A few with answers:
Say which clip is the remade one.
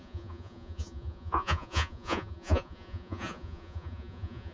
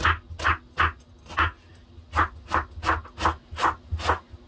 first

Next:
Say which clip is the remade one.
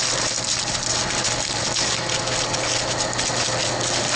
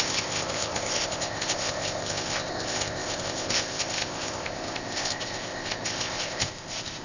second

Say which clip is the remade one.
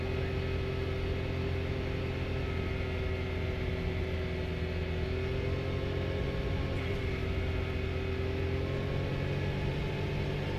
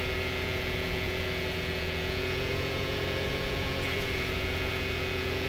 second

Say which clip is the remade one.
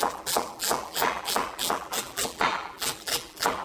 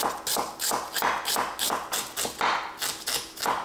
first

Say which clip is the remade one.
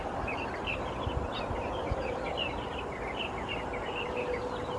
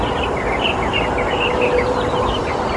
first